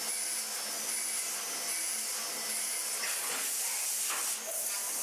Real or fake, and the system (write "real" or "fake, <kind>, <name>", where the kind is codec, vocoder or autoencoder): real